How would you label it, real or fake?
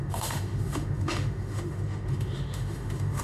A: fake